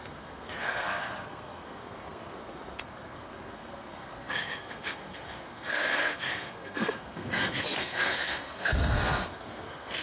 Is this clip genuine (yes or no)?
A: no